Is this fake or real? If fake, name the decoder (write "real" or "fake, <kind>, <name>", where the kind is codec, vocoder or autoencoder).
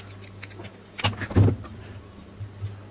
real